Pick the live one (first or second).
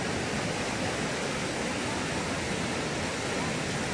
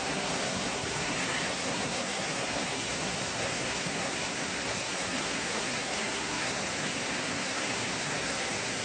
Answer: first